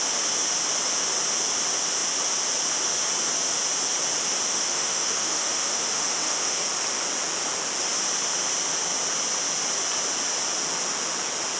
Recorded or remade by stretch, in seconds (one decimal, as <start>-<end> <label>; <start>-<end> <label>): 0.0-4.5 recorded; 4.5-6.6 remade; 6.6-11.6 recorded